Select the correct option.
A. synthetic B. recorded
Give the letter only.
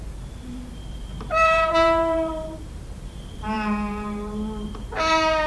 A